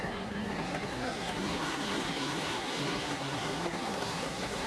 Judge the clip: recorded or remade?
remade